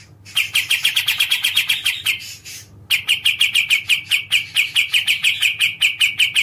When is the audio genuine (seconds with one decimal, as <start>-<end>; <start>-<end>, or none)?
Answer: 0.0-5.2; 5.8-6.4